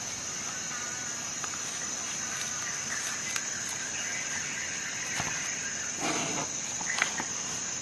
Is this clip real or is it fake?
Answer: real